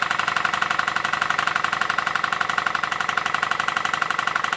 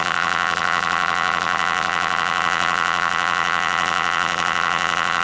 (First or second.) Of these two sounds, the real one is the first